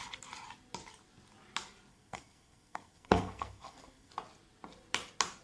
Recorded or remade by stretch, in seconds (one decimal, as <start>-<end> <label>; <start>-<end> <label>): 0.0-1.9 recorded; 1.9-4.1 remade; 4.1-5.4 recorded